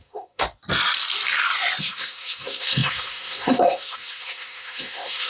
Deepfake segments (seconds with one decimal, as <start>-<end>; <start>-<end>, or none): 0.0-0.4; 1.8-5.3